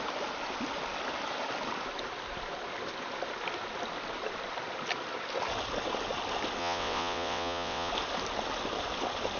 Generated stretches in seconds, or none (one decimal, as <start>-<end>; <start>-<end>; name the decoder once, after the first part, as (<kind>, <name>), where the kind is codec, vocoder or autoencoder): 6.6-7.9 (vocoder, WaveNeXt)